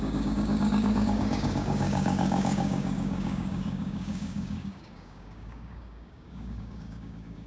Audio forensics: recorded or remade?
remade